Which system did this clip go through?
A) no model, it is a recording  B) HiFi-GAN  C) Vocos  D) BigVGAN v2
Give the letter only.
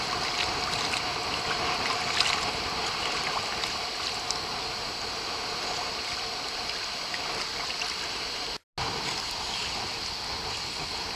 A